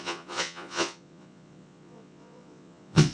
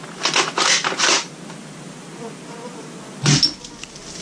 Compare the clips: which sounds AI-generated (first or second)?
first